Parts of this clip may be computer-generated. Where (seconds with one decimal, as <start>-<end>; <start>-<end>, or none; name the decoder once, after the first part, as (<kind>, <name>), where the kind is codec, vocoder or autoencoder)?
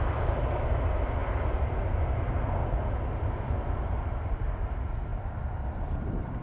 none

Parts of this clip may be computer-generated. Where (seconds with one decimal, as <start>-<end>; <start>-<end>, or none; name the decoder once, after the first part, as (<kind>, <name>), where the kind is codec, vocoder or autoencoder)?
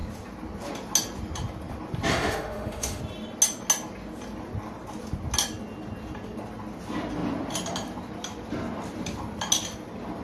2.1-3.0 (autoencoder, DAC-VAE)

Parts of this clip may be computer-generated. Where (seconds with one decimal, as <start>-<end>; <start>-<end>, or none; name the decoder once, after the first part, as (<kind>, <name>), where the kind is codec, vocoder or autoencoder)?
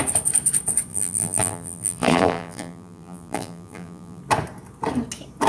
0.9-4.2 (vocoder, BigVGAN v2)